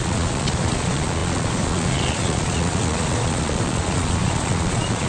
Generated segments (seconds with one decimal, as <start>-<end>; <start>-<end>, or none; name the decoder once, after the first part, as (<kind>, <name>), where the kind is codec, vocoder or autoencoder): 0.0-5.1 (vocoder, Vocos)